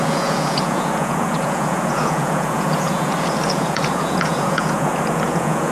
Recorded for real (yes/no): no